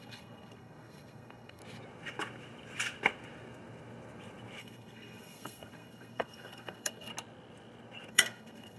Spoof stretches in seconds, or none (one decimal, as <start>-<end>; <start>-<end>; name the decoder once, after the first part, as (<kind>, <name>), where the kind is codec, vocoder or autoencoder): 0.0-1.6 (codec, SNAC); 4.6-7.1; 8.1-8.8